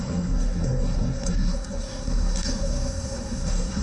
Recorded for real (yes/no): no